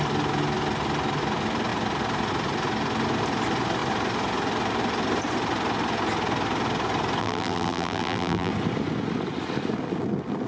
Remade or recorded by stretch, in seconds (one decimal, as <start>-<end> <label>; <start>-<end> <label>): 0.0-7.2 recorded; 7.2-8.5 remade; 8.5-10.5 recorded